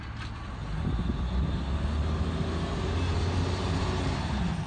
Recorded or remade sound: recorded